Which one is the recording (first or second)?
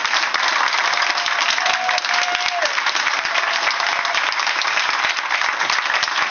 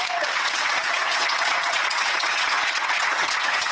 first